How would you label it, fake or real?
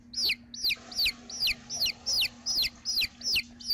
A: real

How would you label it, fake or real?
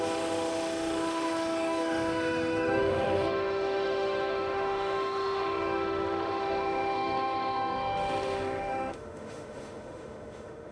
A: fake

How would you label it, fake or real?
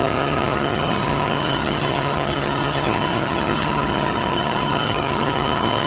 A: fake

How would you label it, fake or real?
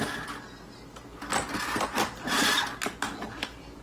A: real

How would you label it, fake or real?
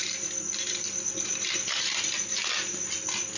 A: real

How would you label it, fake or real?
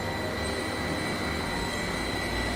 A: real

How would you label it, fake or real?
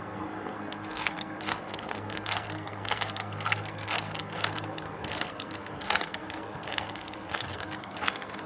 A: fake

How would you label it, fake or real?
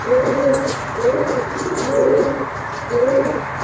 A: fake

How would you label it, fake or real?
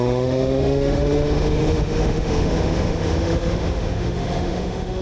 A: fake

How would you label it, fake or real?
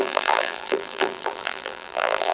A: fake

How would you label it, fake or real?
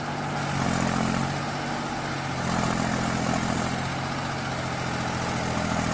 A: real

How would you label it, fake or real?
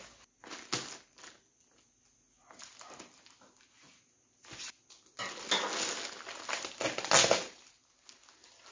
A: real